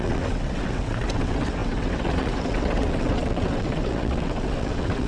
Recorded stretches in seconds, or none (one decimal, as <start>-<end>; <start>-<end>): none